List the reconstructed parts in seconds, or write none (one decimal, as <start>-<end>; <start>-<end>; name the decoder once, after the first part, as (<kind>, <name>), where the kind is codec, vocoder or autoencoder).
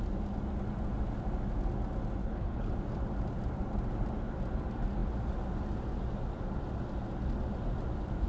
2.2-2.7 (codec, HILCodec)